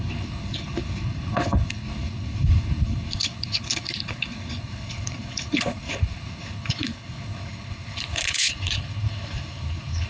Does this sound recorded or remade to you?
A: remade